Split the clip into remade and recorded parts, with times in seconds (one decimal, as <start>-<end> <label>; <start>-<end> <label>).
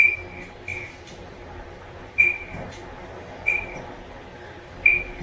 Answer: 0.0-0.7 recorded; 0.7-3.8 remade; 3.8-5.2 recorded